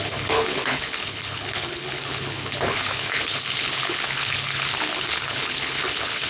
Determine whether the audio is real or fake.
fake